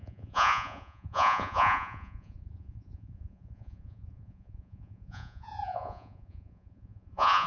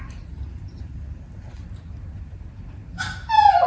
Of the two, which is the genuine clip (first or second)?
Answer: second